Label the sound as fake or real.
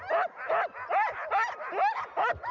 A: real